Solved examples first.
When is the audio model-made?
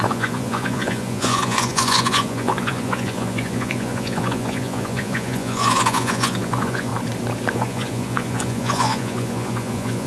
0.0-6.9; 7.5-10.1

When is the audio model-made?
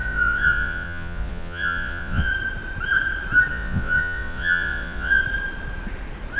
0.0-2.3; 3.5-5.2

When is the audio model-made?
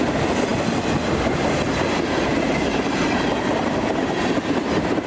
none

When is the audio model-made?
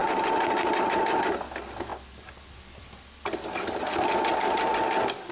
none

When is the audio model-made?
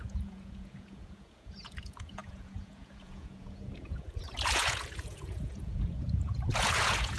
0.0-7.2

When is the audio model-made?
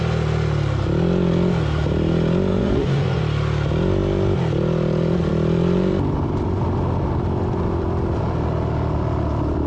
2.5-3.2